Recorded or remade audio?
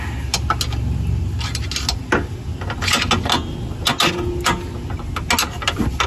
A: recorded